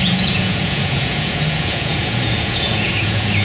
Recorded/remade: remade